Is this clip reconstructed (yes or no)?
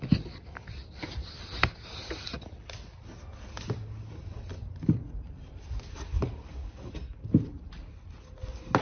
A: no